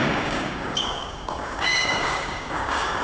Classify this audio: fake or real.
fake